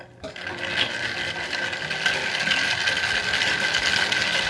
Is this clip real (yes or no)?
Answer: yes